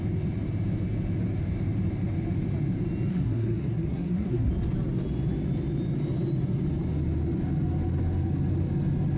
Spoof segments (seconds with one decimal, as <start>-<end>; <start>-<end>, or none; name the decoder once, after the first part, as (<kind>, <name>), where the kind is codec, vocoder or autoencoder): 3.1-4.5 (codec, SNAC)